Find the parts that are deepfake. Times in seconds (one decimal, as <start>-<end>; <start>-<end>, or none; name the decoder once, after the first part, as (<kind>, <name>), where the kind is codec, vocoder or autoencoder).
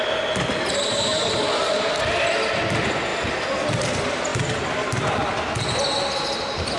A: none